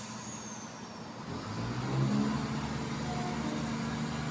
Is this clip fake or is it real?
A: real